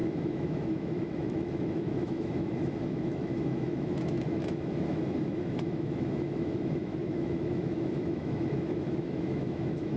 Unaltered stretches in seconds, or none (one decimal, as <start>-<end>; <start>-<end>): none